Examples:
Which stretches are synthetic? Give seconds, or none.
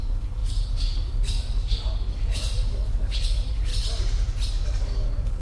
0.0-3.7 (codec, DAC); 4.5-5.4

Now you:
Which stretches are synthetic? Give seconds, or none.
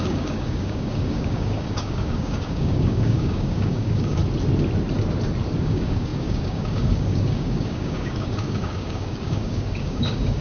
0.0-4.2 (codec, DAC); 5.6-10.4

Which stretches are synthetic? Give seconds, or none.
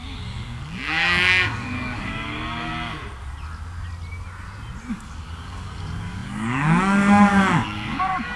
0.0-2.7 (codec, DAC); 4.9-8.4